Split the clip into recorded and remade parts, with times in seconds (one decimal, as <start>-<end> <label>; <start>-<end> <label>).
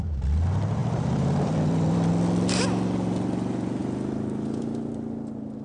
0.0-0.8 recorded; 0.8-2.1 remade; 2.1-3.8 recorded; 3.8-4.6 remade; 4.6-5.6 recorded